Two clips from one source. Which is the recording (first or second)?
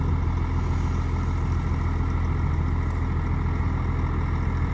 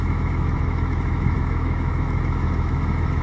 first